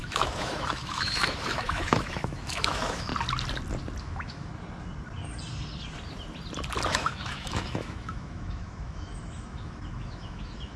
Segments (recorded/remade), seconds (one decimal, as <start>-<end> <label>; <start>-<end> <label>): 0.0-3.1 remade; 3.1-4.0 recorded; 4.0-4.5 remade; 4.5-6.9 recorded; 6.9-10.8 remade